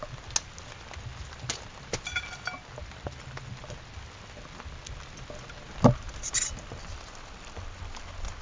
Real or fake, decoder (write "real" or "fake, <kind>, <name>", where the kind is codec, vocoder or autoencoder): real